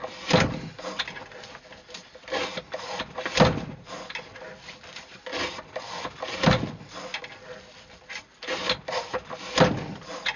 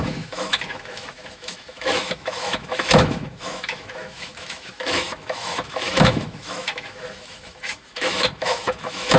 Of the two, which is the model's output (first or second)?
second